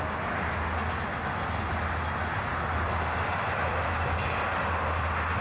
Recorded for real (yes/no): yes